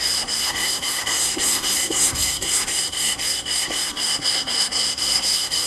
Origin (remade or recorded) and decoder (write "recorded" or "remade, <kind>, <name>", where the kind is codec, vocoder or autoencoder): remade, codec, SNAC